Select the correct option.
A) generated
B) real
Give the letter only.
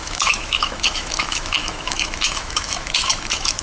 A